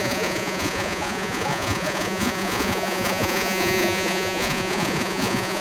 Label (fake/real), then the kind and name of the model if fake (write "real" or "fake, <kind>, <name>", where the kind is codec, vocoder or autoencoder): fake, vocoder, Vocos